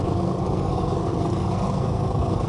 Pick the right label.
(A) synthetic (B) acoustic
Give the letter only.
A